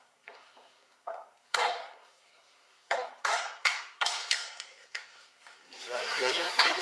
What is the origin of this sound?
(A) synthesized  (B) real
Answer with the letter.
A